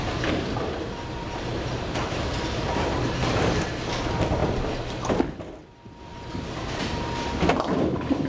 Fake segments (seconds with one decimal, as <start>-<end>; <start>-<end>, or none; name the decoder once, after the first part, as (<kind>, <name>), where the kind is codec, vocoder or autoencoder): 1.3-3.7 (vocoder, BigVGAN v2)